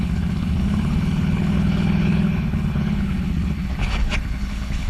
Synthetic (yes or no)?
yes